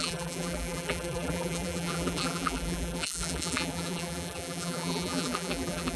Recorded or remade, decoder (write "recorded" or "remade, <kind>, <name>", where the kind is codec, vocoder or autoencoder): remade, vocoder, BigVGAN v2